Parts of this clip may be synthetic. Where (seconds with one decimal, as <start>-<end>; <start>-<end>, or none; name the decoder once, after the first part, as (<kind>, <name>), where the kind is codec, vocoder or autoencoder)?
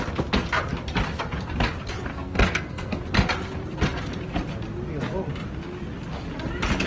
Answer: 2.1-3.0 (codec, SNAC)